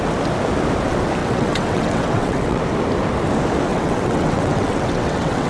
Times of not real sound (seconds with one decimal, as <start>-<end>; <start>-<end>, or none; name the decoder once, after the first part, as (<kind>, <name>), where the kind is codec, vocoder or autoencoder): 1.2-2.6 (vocoder, WaveNeXt); 3.7-5.5